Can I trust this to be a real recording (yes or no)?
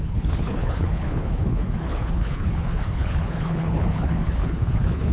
no